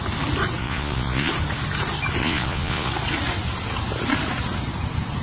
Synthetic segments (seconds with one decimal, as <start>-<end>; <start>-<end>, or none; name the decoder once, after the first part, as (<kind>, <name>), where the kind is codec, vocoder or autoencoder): 0.6-1.3 (vocoder, Vocos); 2.2-2.9